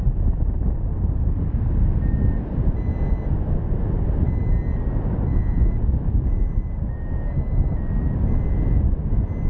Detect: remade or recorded recorded